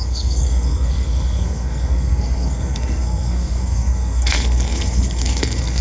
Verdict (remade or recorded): remade